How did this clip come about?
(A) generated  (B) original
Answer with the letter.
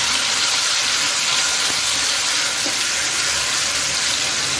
B